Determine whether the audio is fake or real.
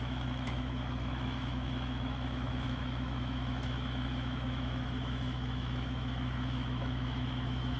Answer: fake